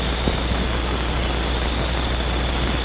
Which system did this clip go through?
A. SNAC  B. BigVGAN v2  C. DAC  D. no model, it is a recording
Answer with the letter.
D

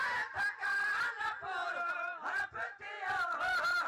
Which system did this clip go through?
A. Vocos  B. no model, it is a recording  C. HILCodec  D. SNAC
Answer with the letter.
B